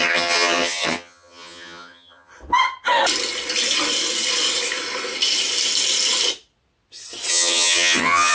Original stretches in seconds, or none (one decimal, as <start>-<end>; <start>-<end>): 2.3-7.3